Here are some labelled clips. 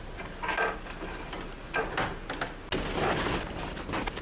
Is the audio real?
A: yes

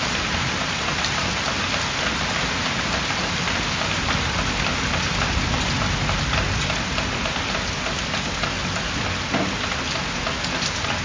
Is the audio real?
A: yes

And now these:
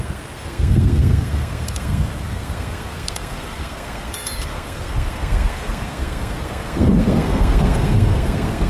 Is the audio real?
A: no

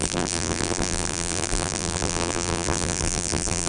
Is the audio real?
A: no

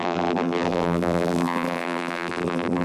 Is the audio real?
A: no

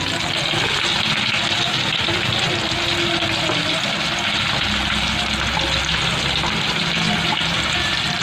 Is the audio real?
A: yes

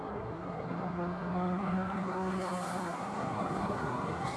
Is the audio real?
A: no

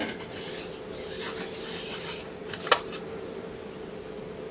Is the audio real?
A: yes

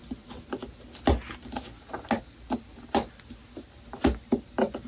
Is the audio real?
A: yes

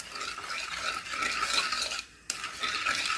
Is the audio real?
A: yes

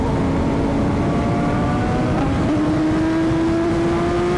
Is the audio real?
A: yes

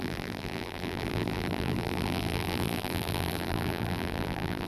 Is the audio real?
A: no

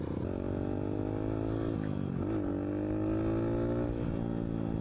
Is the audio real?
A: yes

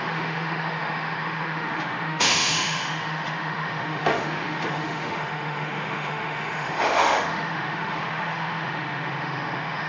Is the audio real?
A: no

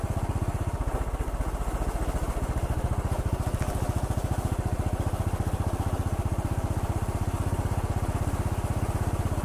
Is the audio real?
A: yes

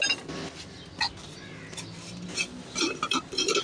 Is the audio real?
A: yes